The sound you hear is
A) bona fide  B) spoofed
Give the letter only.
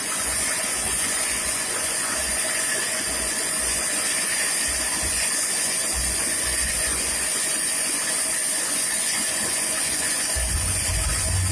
B